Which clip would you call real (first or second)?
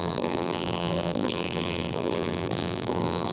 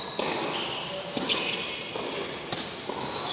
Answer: second